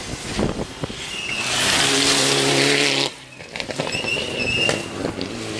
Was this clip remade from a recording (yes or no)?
no